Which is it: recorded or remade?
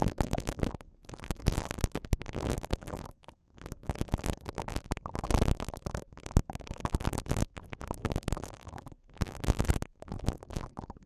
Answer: remade